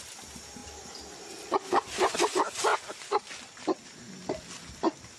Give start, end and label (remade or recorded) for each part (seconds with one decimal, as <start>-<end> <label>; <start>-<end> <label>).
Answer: 0.0-5.2 recorded